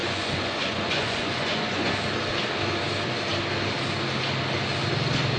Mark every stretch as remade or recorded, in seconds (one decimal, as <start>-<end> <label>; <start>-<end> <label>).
0.0-1.9 remade; 1.9-5.4 recorded

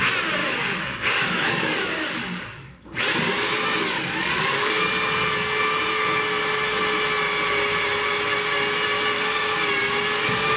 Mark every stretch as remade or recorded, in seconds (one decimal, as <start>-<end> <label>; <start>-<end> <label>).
0.0-0.4 recorded; 0.4-3.0 remade; 3.0-3.8 recorded; 3.8-4.9 remade; 4.9-10.6 recorded

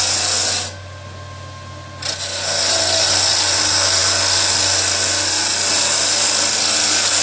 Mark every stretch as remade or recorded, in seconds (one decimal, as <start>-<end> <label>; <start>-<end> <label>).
0.0-7.2 recorded

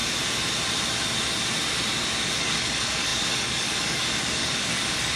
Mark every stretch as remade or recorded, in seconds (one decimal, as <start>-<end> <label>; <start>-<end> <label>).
0.0-2.4 recorded; 2.4-5.2 remade

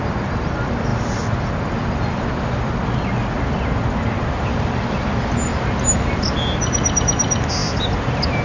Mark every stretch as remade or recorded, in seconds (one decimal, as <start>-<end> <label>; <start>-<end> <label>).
0.0-8.4 recorded